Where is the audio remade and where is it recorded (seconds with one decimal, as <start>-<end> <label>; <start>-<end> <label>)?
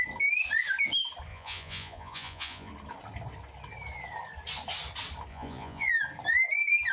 0.0-1.3 recorded; 1.3-2.7 remade; 2.7-5.3 recorded; 5.3-5.9 remade; 5.9-6.9 recorded